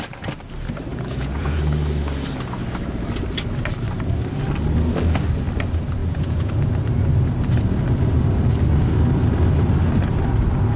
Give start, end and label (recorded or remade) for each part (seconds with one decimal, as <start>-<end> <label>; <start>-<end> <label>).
0.0-0.9 recorded; 0.9-1.6 remade; 1.6-6.0 recorded; 6.0-6.5 remade; 6.5-10.8 recorded

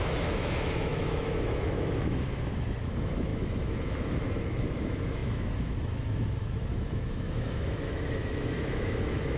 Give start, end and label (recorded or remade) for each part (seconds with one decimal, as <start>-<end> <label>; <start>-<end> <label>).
0.0-9.4 remade

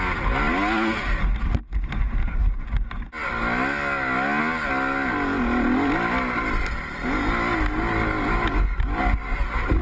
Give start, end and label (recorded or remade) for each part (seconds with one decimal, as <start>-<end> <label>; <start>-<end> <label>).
0.0-9.8 recorded

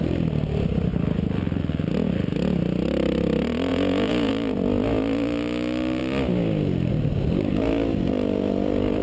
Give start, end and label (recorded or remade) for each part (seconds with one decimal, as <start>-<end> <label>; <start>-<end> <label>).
0.0-3.7 recorded; 3.7-4.3 remade; 4.3-9.0 recorded